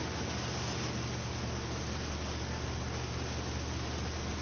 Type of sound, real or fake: real